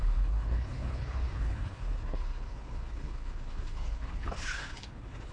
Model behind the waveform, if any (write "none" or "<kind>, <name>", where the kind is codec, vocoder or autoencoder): codec, HILCodec